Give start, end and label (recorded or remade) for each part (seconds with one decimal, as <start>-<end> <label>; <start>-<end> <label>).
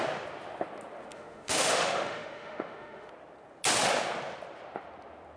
0.0-1.1 recorded; 1.1-3.1 remade; 3.1-5.4 recorded